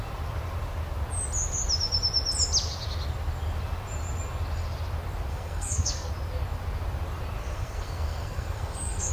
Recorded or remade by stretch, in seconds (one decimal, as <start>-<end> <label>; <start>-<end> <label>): 0.0-5.3 recorded; 5.3-6.1 remade; 6.1-7.4 recorded; 7.4-9.1 remade